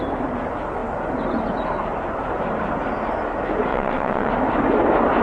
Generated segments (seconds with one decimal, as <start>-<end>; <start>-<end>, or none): 3.7-4.3